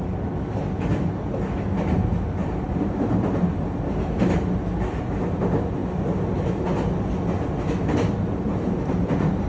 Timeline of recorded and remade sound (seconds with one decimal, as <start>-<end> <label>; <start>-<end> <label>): 0.0-2.4 recorded; 2.4-3.6 remade; 3.6-9.5 recorded